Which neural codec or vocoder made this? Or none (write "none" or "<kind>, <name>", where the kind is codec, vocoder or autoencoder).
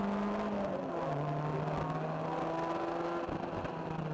none